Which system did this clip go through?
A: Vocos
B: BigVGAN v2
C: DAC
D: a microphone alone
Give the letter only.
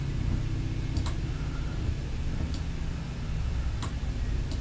D